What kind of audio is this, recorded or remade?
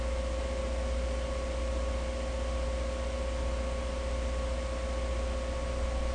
recorded